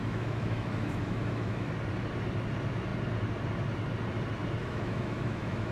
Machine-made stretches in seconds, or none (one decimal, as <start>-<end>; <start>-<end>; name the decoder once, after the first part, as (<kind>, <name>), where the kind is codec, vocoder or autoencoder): 0.0-1.7 (autoencoder, DAC-VAE); 4.6-5.7